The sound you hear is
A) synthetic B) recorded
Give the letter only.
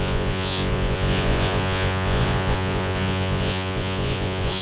A